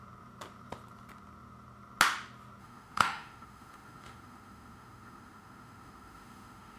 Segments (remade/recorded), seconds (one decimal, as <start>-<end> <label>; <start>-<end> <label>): 0.0-2.6 recorded; 2.6-6.8 remade